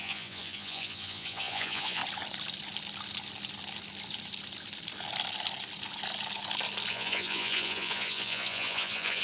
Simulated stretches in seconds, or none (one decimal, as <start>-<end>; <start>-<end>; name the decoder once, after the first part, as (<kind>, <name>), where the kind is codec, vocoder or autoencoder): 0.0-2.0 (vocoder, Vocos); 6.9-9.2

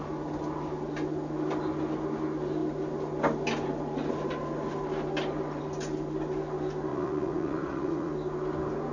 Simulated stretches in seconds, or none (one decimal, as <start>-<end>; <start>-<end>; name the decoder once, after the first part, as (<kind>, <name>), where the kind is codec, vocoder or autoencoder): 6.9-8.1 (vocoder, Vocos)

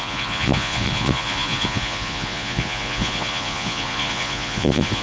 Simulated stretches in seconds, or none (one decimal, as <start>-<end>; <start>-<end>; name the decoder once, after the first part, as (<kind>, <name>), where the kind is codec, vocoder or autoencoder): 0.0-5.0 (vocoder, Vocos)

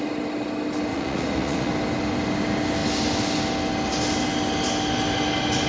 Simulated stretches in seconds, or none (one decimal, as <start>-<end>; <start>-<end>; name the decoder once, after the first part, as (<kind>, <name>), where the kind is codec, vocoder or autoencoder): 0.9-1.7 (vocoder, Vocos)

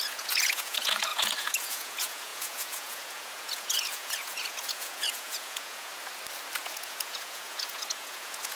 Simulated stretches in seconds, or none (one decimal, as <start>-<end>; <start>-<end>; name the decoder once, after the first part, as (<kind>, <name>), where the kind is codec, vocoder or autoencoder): 0.0-5.9 (vocoder, Vocos); 6.6-8.6

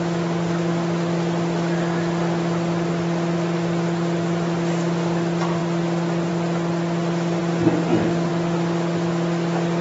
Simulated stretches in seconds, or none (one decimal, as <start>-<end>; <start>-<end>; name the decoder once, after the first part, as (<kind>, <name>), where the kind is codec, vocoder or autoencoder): none